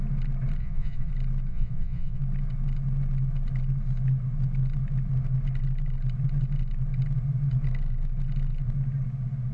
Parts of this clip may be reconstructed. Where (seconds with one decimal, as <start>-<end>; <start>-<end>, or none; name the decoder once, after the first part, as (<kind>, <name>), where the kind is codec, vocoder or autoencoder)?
0.6-1.1 (vocoder, Vocos); 1.5-2.2